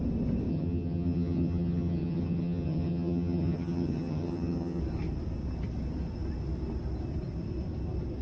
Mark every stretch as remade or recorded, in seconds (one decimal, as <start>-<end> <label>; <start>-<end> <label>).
0.0-0.5 recorded; 0.5-4.8 remade; 4.8-8.2 recorded